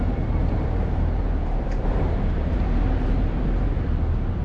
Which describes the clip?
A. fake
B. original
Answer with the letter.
A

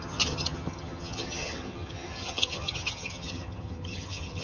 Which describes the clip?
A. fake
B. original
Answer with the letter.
A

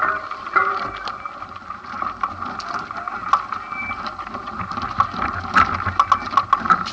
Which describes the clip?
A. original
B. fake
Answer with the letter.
A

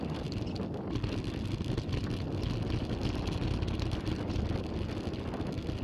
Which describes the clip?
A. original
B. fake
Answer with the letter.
A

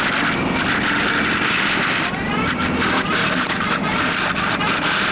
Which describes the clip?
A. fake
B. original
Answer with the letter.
B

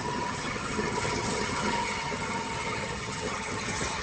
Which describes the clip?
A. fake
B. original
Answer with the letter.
A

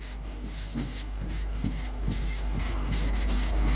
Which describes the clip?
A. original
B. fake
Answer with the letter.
B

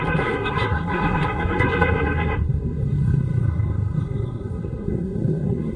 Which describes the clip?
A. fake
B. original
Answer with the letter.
A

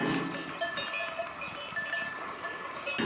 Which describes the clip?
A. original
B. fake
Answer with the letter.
A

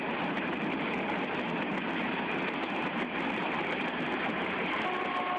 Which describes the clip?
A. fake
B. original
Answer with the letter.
B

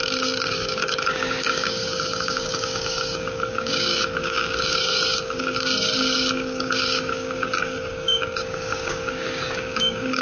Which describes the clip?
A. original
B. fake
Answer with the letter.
B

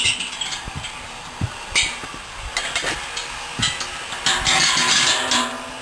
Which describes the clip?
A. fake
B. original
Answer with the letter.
B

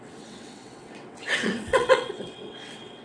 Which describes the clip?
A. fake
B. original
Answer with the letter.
A